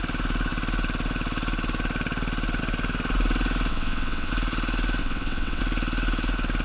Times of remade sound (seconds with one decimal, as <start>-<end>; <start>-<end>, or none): 3.7-4.3; 5.0-5.6